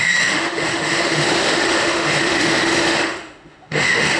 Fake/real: fake